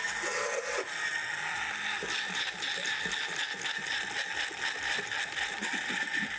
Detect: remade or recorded recorded